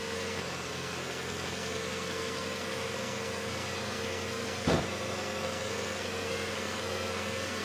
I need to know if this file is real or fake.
fake